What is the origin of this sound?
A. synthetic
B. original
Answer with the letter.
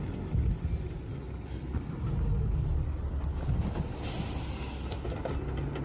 B